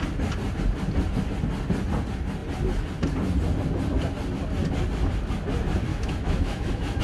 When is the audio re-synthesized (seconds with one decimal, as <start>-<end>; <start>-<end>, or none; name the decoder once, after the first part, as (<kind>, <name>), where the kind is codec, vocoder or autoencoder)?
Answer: 5.9-7.0 (autoencoder, DAC-VAE)